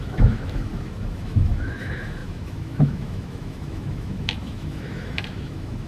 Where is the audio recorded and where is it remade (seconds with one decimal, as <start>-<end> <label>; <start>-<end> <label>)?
0.0-5.9 remade